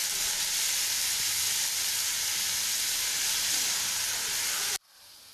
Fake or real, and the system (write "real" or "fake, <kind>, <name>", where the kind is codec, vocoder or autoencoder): real